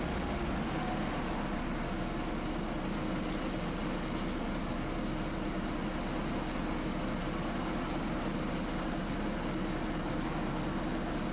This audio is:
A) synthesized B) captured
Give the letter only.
B